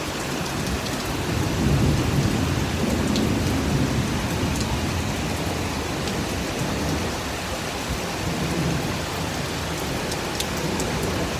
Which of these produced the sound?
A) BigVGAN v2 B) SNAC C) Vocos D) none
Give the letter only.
D